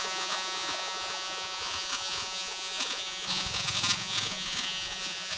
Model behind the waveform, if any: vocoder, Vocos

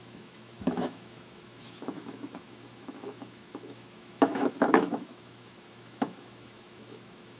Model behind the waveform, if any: autoencoder, DAC-VAE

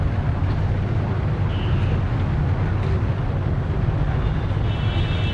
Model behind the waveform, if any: none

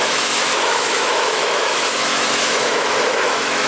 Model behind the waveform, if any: autoencoder, DAC-VAE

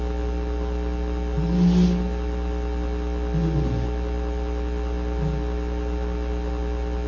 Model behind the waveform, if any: none